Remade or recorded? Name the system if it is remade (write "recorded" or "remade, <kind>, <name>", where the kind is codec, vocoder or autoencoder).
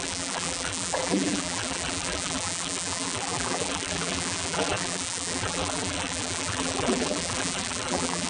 remade, vocoder, BigVGAN v2